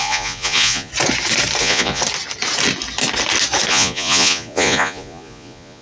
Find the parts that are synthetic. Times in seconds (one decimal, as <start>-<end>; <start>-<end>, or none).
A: 0.0-0.9; 1.6-2.0; 3.7-5.8